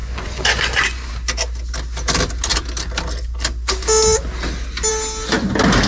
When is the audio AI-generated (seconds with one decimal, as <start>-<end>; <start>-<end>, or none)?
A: 0.0-1.1